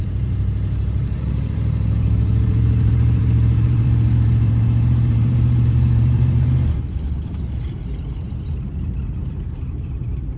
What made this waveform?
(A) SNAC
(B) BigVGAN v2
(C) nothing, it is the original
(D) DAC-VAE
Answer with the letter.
B